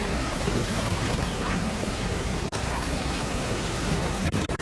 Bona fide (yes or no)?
no